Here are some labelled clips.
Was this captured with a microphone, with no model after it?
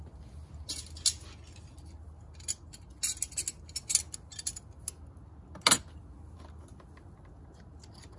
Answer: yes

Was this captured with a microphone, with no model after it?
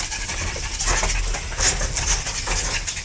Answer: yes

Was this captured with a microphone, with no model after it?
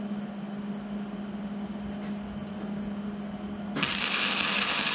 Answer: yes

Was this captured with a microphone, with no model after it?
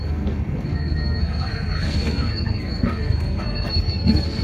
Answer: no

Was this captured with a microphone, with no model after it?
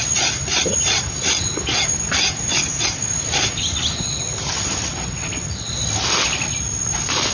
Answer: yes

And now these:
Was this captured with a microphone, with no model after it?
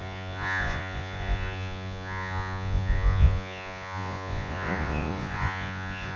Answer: no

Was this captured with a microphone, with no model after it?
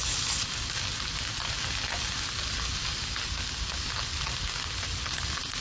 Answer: yes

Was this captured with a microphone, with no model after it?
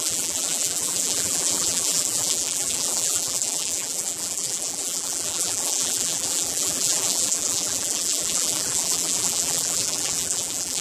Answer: no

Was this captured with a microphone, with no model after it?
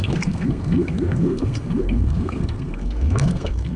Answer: no